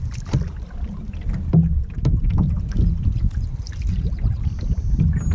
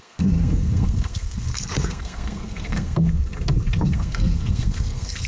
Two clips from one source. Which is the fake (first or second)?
second